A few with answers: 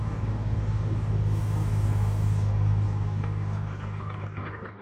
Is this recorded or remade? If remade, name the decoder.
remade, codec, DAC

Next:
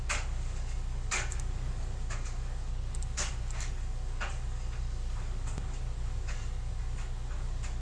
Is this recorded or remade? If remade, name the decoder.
remade, codec, DAC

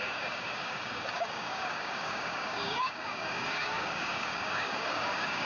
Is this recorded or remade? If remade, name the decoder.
remade, codec, DAC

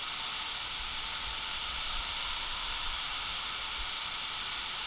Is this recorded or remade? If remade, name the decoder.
recorded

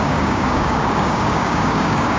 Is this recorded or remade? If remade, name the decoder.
remade, codec, DAC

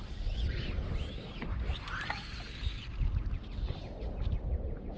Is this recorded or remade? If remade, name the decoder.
recorded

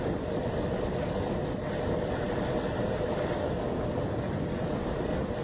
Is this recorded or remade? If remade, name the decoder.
recorded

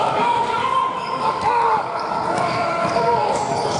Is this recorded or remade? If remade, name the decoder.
remade, codec, DAC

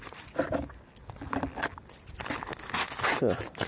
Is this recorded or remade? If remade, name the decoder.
recorded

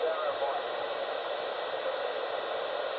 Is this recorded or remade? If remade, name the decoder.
recorded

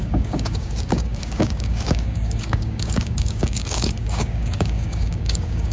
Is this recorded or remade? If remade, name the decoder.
remade, codec, DAC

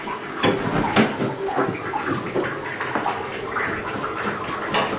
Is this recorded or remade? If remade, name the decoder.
recorded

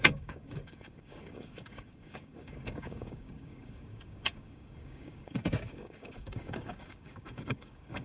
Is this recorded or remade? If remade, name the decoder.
remade, codec, DAC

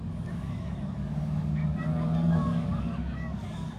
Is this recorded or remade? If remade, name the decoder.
remade, codec, DAC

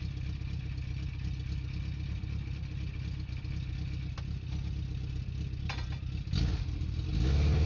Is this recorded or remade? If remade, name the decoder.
recorded